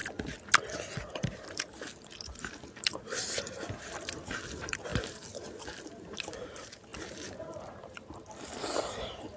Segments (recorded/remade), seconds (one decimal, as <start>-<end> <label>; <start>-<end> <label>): 0.0-1.1 recorded; 1.1-9.4 remade